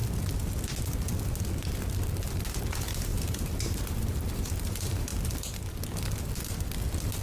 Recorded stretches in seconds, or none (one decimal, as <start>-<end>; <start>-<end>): 0.0-2.6; 5.1-7.2